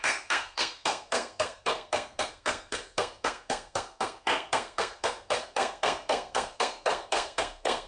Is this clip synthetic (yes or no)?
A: yes